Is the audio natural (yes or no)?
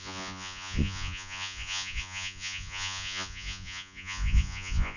no